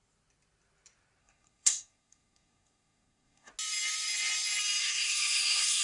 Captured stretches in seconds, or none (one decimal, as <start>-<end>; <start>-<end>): 0.0-1.2; 3.5-4.8